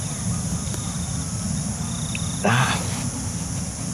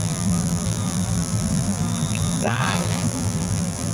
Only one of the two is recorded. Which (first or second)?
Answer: first